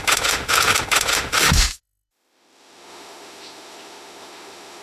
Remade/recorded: remade